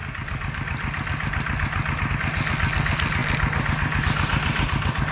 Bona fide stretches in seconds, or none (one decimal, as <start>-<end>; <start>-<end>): 0.0-5.1